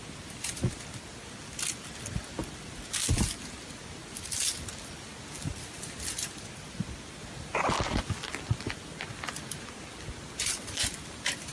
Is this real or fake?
real